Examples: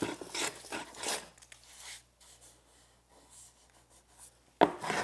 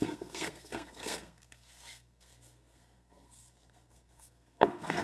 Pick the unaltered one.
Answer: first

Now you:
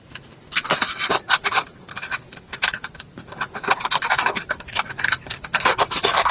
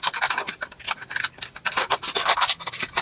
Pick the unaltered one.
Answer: second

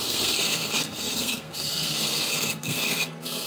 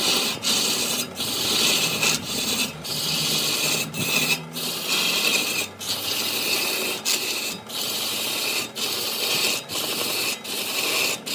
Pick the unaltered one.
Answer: second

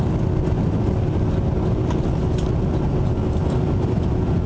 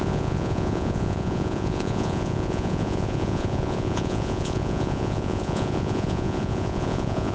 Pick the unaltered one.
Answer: first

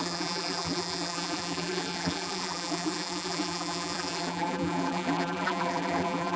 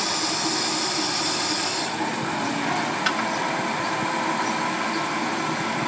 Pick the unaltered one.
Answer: second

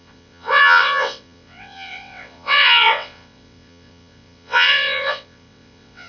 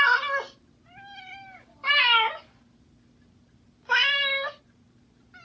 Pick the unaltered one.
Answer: second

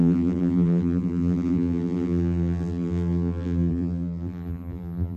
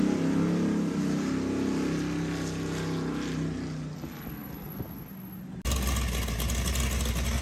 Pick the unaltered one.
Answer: second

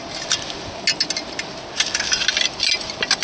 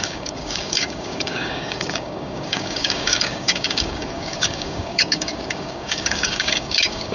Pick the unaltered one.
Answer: first